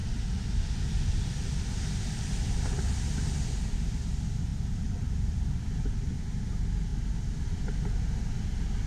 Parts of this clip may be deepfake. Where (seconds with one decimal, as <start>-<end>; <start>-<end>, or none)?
4.5-6.0